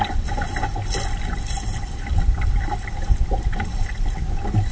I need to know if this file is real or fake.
real